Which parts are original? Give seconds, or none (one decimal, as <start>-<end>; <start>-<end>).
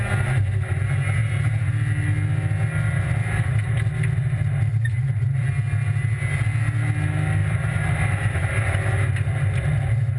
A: 0.0-1.2; 1.7-4.7; 5.4-7.4; 9.0-10.2